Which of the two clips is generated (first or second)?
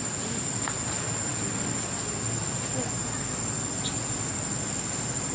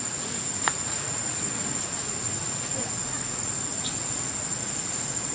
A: second